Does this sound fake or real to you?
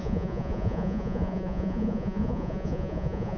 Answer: fake